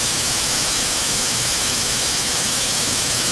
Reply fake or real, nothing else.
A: fake